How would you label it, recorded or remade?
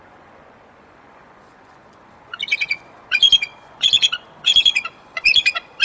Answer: remade